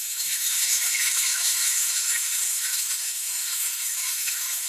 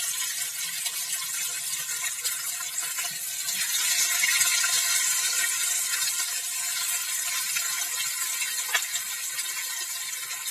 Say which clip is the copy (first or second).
first